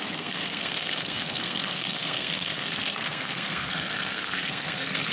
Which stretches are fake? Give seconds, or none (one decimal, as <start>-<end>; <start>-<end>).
0.0-5.1